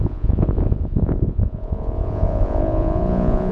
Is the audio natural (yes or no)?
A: no